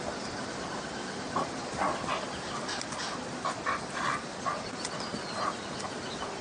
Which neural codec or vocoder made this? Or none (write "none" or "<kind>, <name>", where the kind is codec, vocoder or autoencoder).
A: none